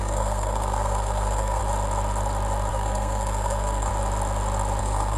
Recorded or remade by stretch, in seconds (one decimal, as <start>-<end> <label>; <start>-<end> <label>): 0.0-1.6 remade; 1.6-2.7 recorded; 2.7-3.9 remade; 3.9-4.8 recorded; 4.8-5.2 remade